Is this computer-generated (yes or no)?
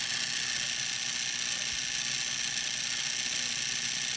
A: no